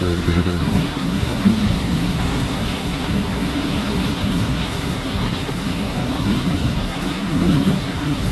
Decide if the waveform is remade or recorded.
remade